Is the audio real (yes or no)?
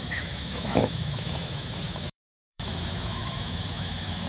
no